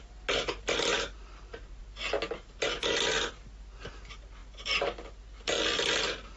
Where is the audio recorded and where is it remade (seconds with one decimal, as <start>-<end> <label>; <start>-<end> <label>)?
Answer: 0.0-6.4 recorded